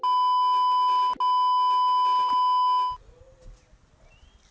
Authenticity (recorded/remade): recorded